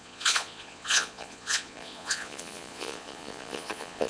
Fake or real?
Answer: fake